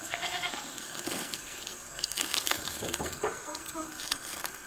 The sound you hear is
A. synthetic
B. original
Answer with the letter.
A